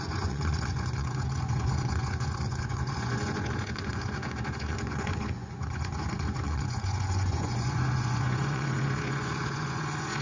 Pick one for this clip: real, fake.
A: fake